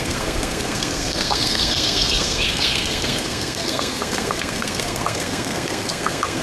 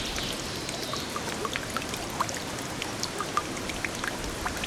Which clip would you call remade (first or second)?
first